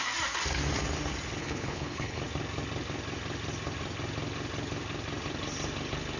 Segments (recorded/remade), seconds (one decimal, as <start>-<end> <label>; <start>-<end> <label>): 0.0-1.4 recorded; 1.4-2.2 remade; 2.2-6.2 recorded